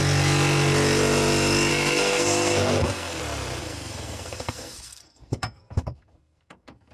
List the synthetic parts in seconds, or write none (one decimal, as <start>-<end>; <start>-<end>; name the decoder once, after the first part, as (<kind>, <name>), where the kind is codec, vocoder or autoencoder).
1.7-3.2 (codec, SNAC); 3.6-6.9